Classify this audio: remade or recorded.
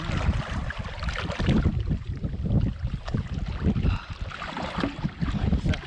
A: recorded